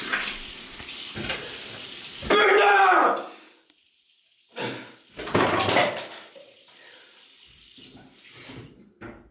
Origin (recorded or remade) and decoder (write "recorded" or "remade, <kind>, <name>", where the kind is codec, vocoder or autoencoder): remade, vocoder, BigVGAN v2